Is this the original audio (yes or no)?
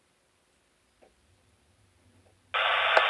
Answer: yes